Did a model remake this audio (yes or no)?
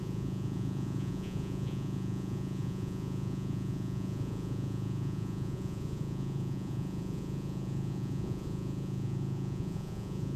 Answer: yes